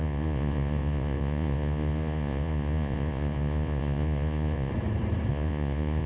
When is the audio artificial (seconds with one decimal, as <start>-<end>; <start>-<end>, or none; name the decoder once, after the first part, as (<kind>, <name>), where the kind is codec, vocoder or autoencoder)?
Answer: 0.0-4.7 (vocoder, Vocos); 5.3-6.1